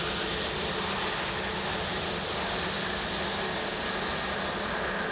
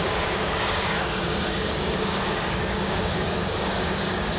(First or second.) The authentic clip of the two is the first